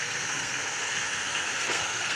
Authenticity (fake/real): fake